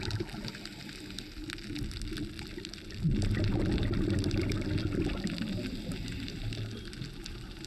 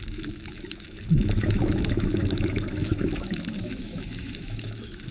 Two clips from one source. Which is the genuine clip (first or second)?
first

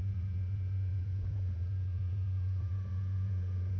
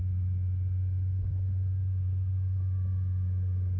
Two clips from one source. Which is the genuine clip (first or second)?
second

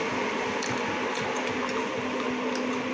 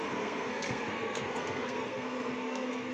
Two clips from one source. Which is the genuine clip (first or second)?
first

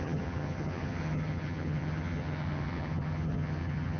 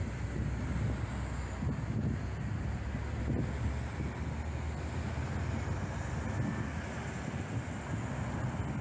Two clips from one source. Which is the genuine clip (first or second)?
second